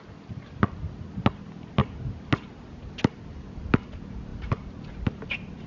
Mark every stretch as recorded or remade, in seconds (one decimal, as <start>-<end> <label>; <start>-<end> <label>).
0.0-5.7 recorded